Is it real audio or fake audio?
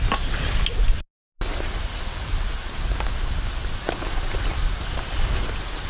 real